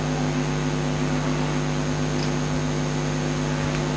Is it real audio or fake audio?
real